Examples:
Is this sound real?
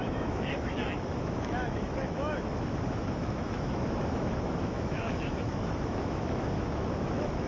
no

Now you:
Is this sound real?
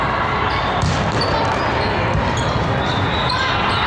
no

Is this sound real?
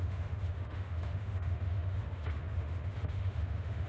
no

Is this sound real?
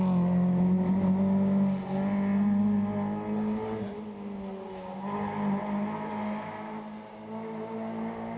yes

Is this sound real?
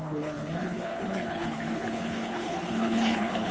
no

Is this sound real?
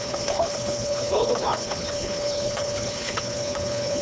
no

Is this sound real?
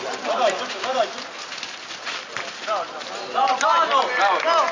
yes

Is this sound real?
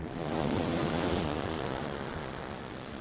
no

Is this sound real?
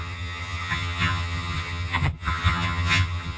no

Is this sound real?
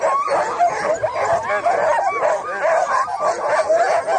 yes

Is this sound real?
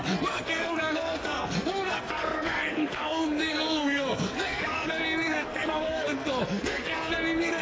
no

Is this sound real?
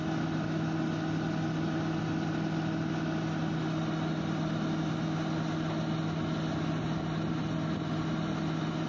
yes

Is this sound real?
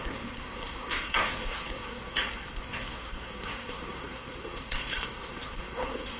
no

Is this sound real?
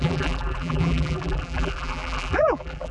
no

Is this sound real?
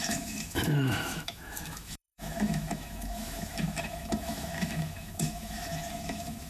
no